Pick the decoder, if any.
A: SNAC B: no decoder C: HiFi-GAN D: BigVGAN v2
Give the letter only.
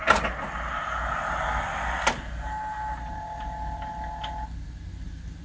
B